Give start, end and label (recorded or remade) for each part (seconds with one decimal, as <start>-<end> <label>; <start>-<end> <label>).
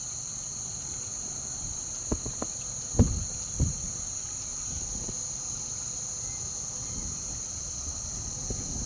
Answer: 0.0-8.9 recorded